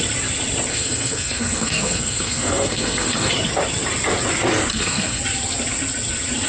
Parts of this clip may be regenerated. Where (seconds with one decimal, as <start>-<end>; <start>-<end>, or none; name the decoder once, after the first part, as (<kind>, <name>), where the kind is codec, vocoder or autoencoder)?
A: 0.7-3.3 (codec, SNAC); 4.7-5.2

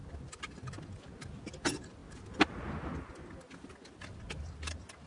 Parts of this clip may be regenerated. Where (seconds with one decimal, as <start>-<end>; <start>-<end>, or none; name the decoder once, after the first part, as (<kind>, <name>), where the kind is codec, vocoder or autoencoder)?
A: none

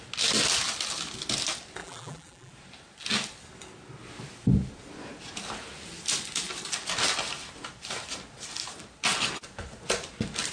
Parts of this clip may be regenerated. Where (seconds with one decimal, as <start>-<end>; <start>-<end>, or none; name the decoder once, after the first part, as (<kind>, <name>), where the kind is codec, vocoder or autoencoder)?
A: 1.8-2.5 (vocoder, BigVGAN v2)

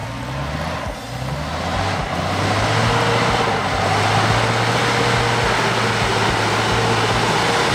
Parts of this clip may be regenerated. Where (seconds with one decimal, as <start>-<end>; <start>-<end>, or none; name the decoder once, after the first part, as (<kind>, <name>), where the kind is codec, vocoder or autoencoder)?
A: none